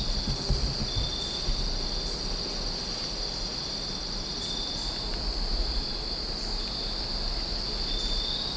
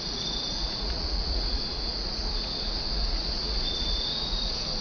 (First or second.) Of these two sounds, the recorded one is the first